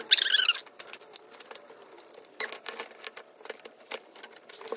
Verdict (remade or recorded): recorded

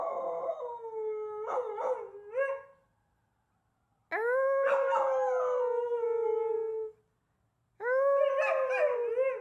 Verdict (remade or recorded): recorded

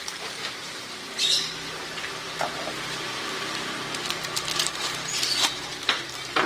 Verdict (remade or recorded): remade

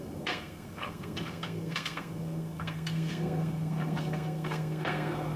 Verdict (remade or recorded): remade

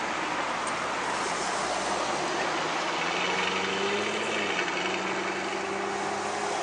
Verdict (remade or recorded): recorded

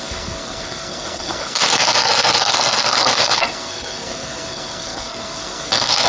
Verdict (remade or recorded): remade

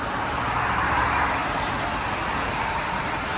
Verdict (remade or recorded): recorded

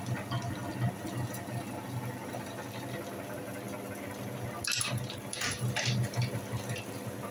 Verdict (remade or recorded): recorded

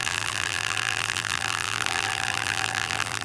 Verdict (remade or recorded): remade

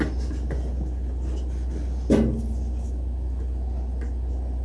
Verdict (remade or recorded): recorded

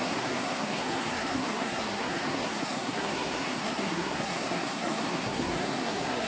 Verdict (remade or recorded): remade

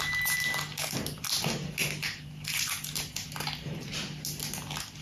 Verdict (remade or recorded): recorded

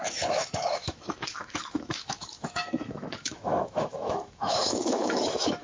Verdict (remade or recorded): remade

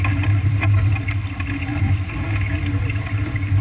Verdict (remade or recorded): recorded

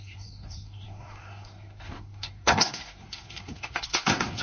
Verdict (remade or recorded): remade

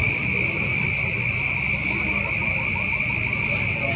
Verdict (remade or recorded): recorded